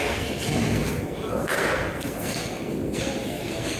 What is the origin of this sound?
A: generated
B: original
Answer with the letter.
A